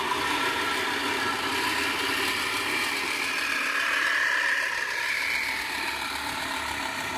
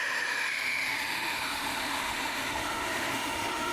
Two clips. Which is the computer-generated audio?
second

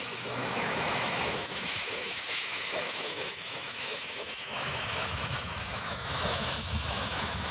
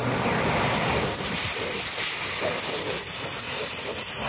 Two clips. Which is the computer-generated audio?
first